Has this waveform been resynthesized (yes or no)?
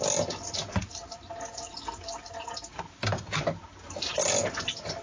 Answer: no